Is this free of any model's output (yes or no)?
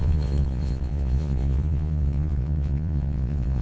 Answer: no